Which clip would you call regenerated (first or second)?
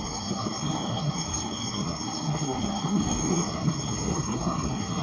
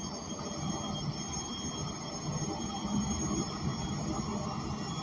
first